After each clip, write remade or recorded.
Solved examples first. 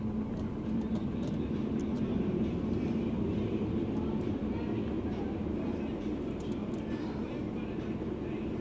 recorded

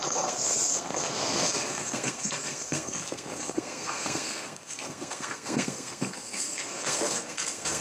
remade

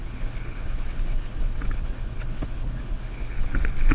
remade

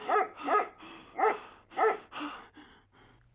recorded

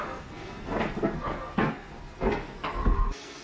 remade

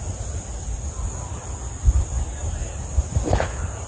recorded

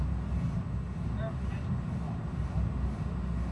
recorded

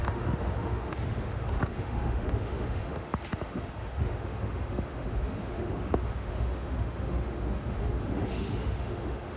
remade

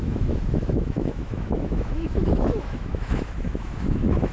remade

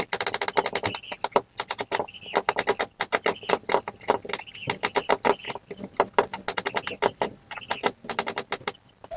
recorded